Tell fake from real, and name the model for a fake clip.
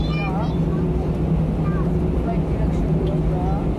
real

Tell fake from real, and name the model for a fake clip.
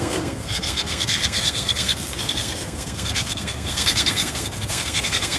fake, codec, SNAC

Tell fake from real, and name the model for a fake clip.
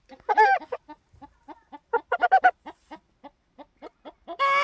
real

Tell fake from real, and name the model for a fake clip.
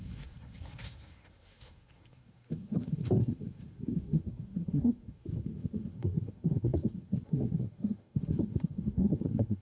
fake, codec, SNAC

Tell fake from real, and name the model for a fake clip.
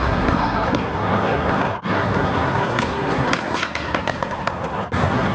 fake, codec, SNAC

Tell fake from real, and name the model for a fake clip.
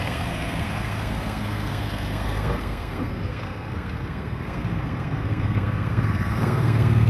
fake, codec, SNAC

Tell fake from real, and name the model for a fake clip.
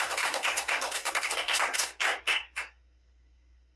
fake, codec, SNAC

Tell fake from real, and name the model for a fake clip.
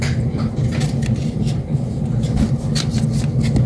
real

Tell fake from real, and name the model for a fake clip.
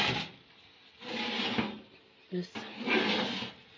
real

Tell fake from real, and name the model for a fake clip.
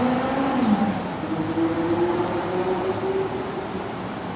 real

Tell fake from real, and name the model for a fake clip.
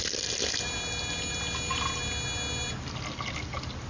real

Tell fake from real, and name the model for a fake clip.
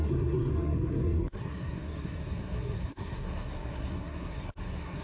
fake, codec, SNAC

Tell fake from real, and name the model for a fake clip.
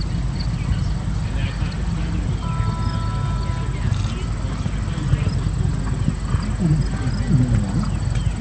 real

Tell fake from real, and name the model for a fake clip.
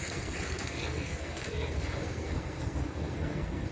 fake, codec, SNAC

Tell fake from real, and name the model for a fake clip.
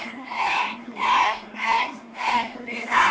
fake, codec, SNAC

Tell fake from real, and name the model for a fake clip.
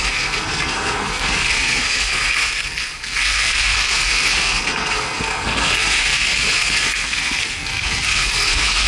fake, codec, SNAC